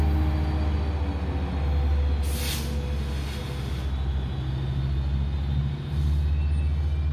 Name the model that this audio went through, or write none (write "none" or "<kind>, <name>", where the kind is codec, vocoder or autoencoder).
none